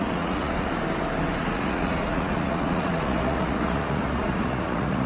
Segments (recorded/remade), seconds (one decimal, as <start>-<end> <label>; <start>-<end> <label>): 0.0-0.7 remade; 0.7-1.4 recorded; 1.4-5.1 remade